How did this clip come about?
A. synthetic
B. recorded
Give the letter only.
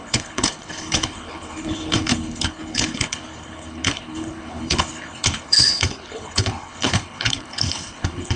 A